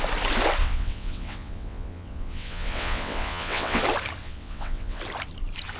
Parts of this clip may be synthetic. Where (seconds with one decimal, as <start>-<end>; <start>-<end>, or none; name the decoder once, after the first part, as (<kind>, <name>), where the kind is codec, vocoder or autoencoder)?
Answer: 0.6-3.8 (vocoder, WaveNeXt); 4.2-5.0